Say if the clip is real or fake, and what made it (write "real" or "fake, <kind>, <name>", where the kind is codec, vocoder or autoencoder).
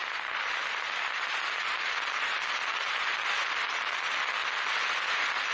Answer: real